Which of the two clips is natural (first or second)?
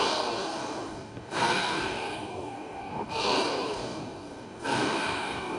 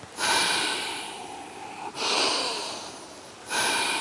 second